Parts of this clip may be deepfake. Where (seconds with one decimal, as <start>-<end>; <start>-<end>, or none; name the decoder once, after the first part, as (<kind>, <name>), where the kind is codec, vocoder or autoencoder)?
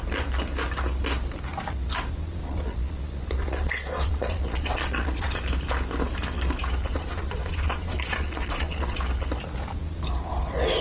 2.4-5.4 (vocoder, Vocos); 6.9-9.0